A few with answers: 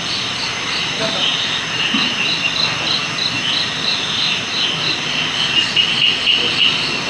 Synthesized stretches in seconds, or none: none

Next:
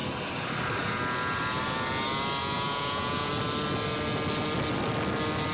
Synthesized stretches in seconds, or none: 2.4-3.3

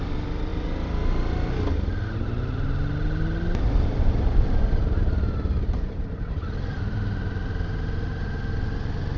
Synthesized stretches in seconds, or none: none

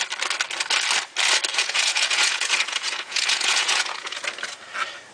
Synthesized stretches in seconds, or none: 1.5-4.2

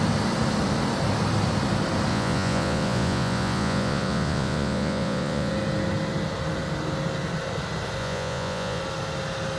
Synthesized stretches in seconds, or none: 2.1-5.5; 8.0-8.8

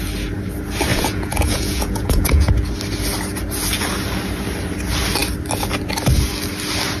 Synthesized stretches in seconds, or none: 0.9-2.5